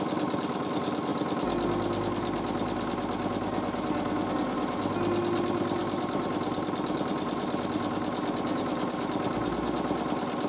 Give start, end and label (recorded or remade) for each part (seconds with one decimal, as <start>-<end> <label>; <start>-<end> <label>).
0.0-10.5 recorded